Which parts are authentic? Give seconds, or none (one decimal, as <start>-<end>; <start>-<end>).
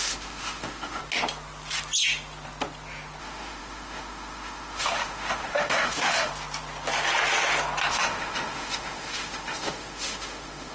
1.0-3.2; 6.3-7.9